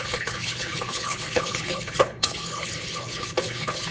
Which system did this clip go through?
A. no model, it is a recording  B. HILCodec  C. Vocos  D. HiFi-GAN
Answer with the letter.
B